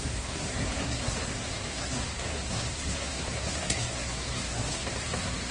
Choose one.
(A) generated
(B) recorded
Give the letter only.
A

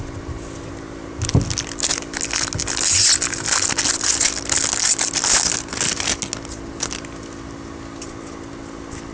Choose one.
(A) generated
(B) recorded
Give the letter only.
B